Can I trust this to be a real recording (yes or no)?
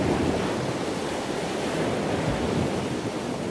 yes